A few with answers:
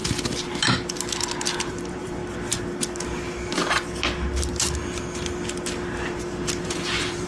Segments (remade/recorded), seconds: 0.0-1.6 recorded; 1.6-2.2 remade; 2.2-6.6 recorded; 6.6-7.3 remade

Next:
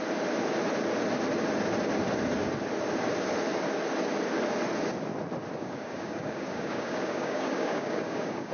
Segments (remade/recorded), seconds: 0.0-5.6 recorded; 5.6-8.5 remade

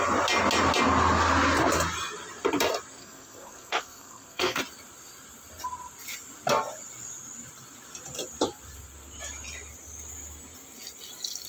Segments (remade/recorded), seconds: 0.0-3.0 recorded; 3.0-4.6 remade; 4.6-11.5 recorded

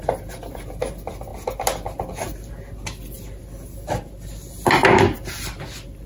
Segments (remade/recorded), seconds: 0.0-6.1 recorded

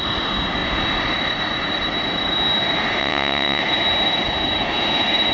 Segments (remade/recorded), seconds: 0.0-3.0 recorded; 3.0-3.6 remade; 3.6-5.3 recorded

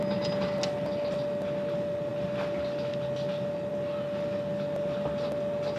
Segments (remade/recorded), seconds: 0.0-5.8 recorded

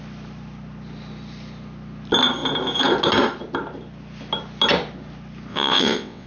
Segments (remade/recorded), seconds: 0.0-5.5 recorded; 5.5-6.3 remade

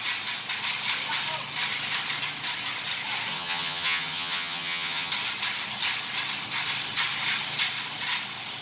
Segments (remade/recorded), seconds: 0.0-3.3 recorded; 3.3-5.1 remade; 5.1-8.6 recorded